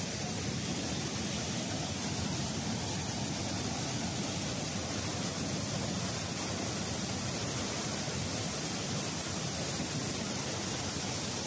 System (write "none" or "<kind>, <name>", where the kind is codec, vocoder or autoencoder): none